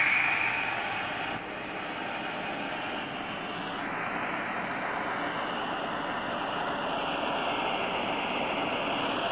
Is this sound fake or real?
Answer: real